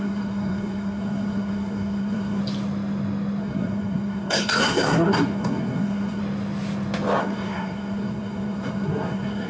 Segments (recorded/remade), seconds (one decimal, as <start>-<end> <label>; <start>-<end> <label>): 0.0-2.4 remade; 2.4-3.4 recorded; 3.4-6.2 remade; 6.2-7.2 recorded; 7.2-9.5 remade

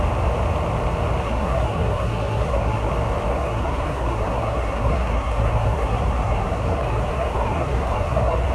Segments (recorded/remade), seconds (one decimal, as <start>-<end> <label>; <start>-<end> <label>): 0.0-1.2 recorded; 1.2-2.9 remade; 2.9-3.3 recorded; 3.3-8.5 remade